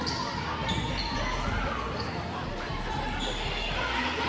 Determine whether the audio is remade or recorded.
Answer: recorded